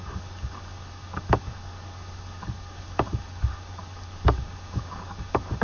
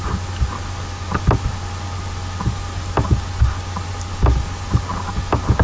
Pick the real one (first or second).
second